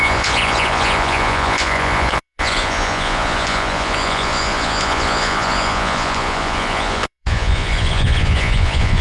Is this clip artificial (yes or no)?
yes